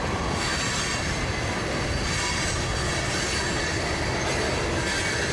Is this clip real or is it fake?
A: real